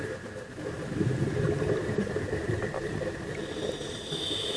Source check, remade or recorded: remade